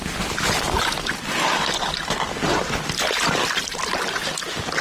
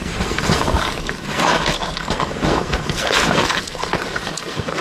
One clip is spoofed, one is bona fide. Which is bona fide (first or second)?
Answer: first